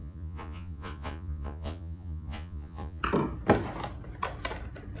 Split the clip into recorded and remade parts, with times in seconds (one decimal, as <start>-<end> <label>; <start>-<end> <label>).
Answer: 0.0-3.0 remade; 3.0-5.0 recorded